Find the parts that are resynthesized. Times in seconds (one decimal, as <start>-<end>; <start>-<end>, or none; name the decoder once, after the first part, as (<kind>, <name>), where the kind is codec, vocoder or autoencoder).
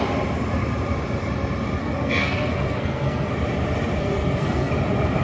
1.8-3.3 (codec, SNAC); 4.0-4.7